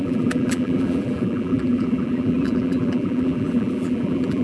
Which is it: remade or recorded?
remade